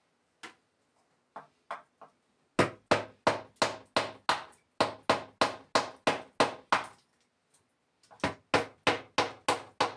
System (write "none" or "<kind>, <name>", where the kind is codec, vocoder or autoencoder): none